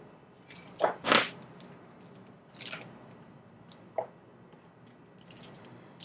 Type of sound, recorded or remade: recorded